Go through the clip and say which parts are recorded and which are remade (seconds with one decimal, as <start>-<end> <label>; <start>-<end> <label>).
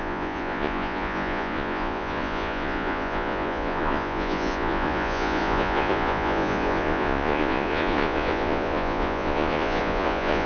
0.0-10.5 remade